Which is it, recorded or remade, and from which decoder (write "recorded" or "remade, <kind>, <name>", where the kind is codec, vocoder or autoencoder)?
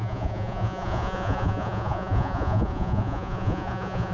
remade, vocoder, Vocos